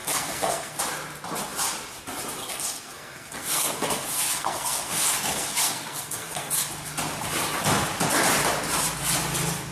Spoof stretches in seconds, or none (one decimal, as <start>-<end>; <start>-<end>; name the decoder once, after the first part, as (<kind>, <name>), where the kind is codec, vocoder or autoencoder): 0.0-0.8 (codec, SNAC); 2.4-6.7